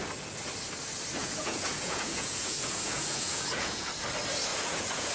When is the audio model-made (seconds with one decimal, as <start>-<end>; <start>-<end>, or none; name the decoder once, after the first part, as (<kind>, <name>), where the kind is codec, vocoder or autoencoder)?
1.2-3.9 (vocoder, Vocos); 4.5-5.1